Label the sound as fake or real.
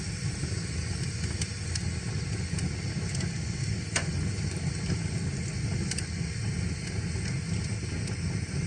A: real